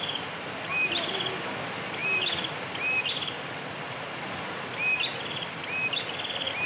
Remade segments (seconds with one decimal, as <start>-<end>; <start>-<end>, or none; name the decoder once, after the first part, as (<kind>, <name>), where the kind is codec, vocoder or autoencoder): none